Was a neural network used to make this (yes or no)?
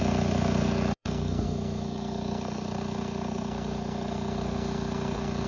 yes